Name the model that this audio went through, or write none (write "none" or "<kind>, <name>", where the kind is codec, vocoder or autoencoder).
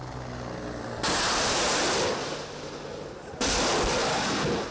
none